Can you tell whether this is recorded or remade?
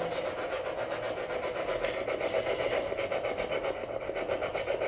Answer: recorded